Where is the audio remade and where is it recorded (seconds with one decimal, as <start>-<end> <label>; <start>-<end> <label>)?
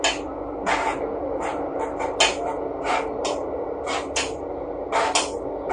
0.0-5.7 recorded